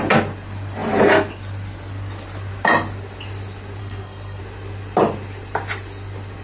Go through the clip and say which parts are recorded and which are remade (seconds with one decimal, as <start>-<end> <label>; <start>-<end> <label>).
0.0-3.8 recorded; 3.8-4.4 remade; 4.4-6.4 recorded